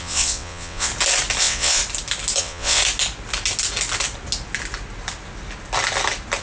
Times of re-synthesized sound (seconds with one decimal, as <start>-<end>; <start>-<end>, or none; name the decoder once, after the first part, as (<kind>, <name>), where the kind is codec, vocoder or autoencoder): 0.0-0.9 (vocoder, WaveNeXt); 1.4-1.8; 2.4-2.8